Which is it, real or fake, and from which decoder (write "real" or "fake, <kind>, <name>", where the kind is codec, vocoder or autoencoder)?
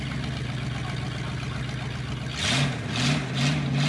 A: real